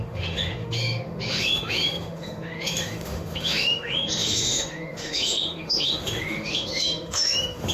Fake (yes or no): yes